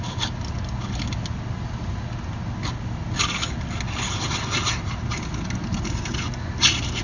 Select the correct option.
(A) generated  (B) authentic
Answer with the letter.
B